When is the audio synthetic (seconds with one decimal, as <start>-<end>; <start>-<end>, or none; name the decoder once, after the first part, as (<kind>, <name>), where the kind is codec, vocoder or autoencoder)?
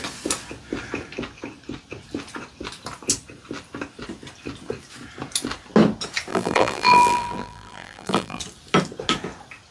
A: 6.3-8.4 (vocoder, BigVGAN v2)